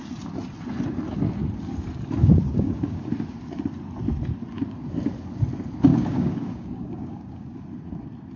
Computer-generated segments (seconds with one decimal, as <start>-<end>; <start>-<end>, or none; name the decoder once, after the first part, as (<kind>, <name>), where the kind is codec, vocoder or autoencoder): 2.2-3.1 (codec, DAC); 5.9-7.6